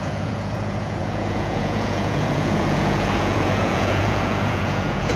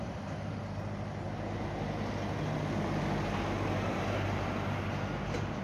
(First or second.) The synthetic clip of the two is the first